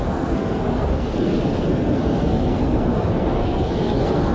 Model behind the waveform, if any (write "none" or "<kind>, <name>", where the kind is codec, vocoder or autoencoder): codec, SNAC